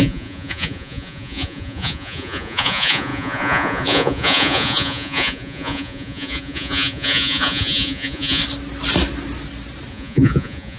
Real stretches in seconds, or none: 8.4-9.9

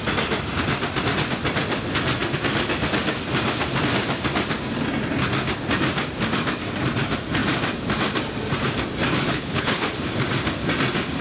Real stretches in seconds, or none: 0.0-9.3; 9.9-11.2

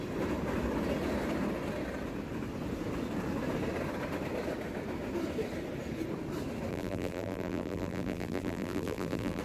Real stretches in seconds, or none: 0.0-6.7

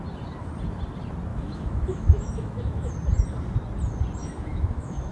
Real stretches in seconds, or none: 0.0-1.3; 2.9-4.2